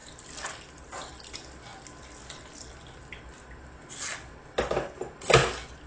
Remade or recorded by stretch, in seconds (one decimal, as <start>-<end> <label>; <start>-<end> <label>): 0.0-5.9 recorded